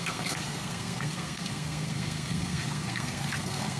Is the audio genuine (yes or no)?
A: no